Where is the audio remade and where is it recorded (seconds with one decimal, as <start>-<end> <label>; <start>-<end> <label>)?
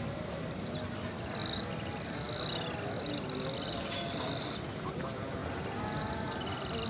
0.0-6.9 recorded